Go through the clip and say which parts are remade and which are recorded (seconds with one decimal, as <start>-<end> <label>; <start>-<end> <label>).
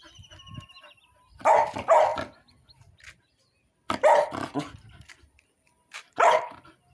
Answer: 0.0-2.1 remade; 2.1-6.1 recorded; 6.1-6.9 remade